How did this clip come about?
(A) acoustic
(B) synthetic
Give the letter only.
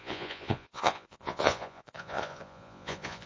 B